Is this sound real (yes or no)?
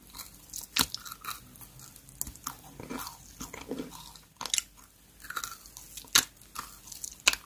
yes